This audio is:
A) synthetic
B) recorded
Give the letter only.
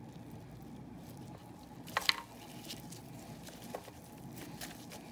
B